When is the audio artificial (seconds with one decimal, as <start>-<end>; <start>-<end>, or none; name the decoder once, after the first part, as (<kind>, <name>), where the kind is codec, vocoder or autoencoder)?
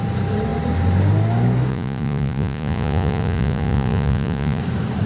1.7-4.6 (vocoder, Vocos)